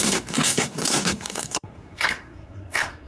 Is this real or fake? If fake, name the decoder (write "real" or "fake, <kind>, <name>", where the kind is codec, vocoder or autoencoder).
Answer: fake, codec, SNAC